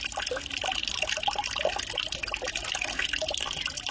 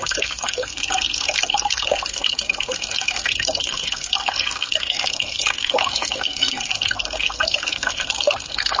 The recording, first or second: first